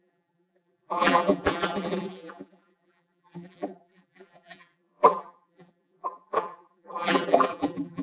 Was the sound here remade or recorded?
remade